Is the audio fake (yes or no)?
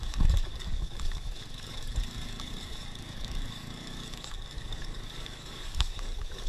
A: yes